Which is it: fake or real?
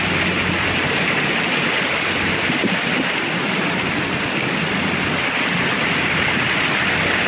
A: real